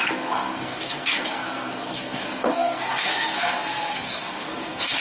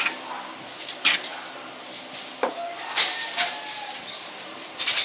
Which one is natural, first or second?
second